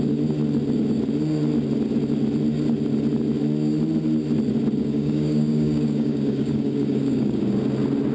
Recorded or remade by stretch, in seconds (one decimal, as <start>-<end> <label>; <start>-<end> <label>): 0.0-4.8 recorded; 4.8-7.4 remade; 7.4-8.1 recorded